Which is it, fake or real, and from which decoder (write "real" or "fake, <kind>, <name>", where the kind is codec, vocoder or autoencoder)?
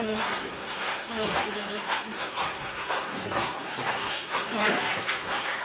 fake, codec, SNAC